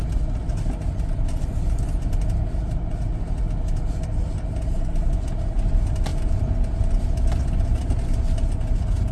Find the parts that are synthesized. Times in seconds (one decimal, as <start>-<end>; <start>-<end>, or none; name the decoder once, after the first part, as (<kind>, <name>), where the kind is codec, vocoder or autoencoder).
none